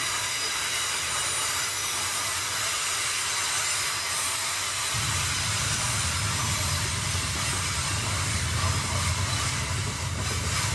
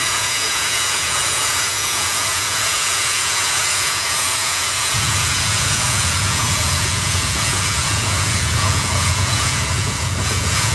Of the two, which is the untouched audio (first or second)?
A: first